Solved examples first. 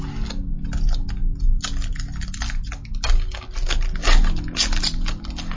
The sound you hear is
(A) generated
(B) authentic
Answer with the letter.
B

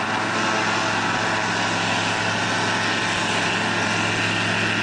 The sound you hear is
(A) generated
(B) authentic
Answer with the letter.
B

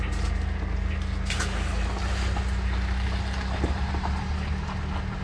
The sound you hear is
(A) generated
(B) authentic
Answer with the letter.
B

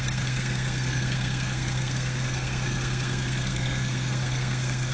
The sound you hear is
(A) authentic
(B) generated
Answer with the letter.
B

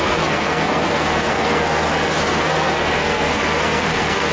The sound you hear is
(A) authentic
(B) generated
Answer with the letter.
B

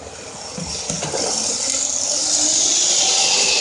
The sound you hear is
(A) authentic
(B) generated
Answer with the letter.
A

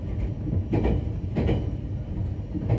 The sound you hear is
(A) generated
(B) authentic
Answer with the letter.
B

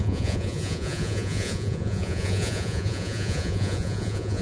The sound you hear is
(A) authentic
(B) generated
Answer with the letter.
B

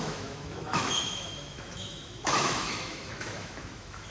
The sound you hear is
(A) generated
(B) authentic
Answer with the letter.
A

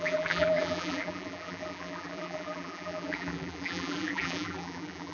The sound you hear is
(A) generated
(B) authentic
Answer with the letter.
A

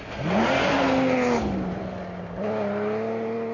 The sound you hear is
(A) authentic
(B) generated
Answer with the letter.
A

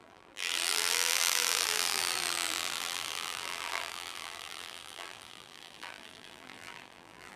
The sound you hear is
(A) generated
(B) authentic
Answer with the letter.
A